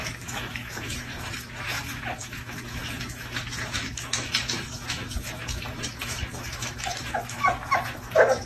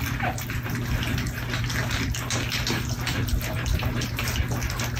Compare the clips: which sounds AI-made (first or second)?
first